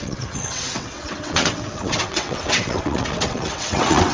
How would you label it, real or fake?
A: fake